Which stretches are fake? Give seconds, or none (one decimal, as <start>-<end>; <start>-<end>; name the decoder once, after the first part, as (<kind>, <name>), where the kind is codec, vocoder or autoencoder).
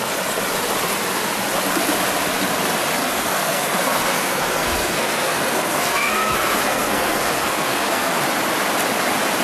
3.0-8.2 (codec, SNAC)